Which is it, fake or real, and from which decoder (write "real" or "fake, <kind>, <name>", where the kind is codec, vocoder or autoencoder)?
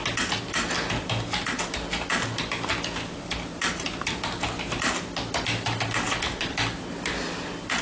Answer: real